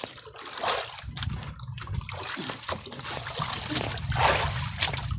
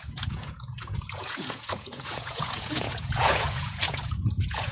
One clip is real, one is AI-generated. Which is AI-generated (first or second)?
second